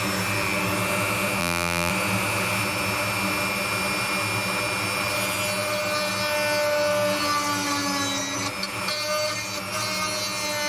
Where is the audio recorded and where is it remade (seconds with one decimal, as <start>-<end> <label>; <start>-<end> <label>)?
0.0-1.4 recorded; 1.4-1.9 remade; 1.9-10.7 recorded